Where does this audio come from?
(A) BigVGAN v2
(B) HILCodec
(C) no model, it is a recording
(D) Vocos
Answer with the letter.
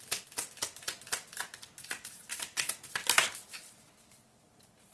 C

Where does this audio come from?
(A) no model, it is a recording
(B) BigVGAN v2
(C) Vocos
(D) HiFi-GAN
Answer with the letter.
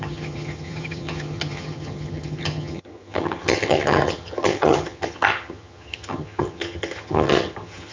D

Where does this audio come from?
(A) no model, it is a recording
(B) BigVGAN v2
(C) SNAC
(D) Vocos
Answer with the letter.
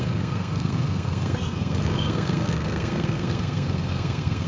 C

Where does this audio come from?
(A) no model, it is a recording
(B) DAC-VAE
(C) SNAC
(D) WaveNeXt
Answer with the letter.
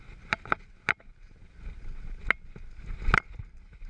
A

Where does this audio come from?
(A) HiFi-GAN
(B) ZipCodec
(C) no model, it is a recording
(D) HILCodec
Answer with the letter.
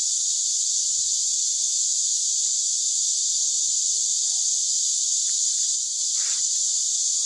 C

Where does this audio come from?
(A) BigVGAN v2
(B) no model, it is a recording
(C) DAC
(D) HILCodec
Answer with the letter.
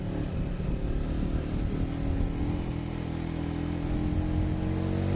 B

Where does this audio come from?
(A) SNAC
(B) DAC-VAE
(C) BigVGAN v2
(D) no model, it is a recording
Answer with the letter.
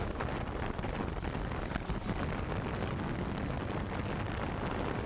D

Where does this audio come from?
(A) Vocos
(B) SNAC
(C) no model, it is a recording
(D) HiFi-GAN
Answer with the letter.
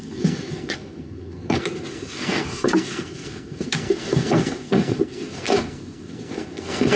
B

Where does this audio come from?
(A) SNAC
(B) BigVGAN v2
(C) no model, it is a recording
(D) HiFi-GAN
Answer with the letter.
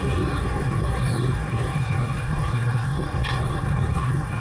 A